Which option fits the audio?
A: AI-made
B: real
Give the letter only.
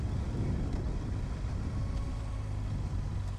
B